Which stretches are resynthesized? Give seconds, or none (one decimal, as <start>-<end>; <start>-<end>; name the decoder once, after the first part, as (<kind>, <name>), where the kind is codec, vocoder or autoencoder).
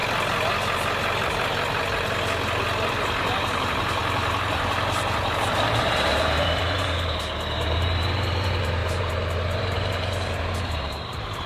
2.9-11.5 (vocoder, BigVGAN v2)